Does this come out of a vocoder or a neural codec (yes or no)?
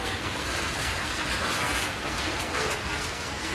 yes